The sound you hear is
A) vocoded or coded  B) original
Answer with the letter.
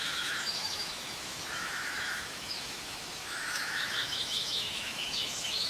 A